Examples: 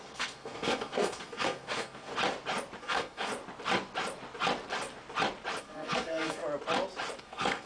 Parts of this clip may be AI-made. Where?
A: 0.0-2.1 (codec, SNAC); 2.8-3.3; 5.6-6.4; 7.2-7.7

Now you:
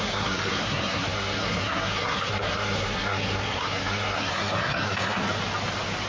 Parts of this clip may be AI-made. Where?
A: 0.0-5.2 (codec, SNAC)

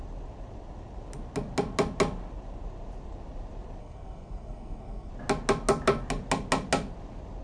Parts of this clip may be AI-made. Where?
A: 3.8-5.1 (codec, SNAC)

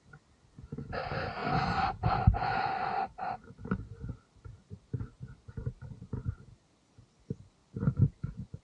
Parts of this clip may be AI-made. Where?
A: 7.6-8.6 (vocoder, Vocos)

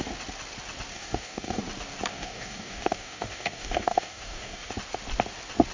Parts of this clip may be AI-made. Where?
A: 0.9-1.6 (codec, DAC); 2.1-4.7

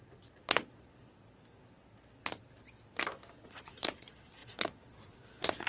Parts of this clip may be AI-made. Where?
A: 0.0-1.1 (vocoder, Vocos); 3.3-5.7